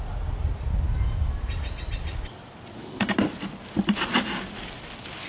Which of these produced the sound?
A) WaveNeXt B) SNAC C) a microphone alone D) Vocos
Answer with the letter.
C